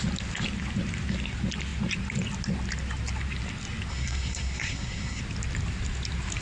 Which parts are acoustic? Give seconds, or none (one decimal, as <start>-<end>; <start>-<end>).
0.0-3.9; 5.2-6.4